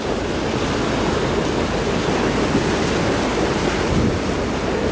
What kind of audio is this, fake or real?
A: real